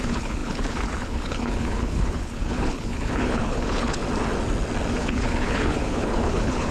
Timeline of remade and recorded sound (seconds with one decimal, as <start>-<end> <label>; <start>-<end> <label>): 0.0-4.0 remade; 4.0-5.0 recorded; 5.0-6.7 remade